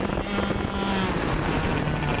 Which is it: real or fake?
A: real